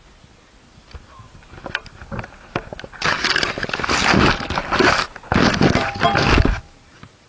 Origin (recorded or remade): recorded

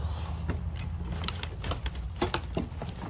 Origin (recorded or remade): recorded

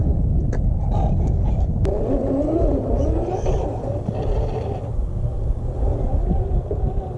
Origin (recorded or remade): recorded